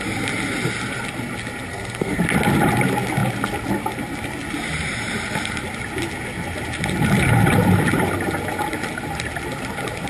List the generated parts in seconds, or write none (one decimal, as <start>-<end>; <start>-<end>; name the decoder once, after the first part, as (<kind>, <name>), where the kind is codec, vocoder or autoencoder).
1.7-2.2 (codec, SNAC)